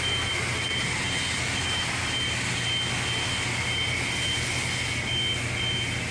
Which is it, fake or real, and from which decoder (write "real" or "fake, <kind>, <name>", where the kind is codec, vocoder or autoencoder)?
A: real